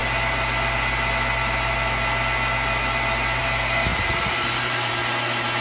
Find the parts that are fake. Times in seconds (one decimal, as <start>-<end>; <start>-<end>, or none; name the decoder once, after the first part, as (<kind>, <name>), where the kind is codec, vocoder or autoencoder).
3.9-4.9 (vocoder, BigVGAN v2)